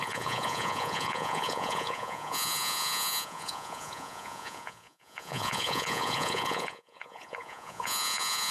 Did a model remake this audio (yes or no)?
yes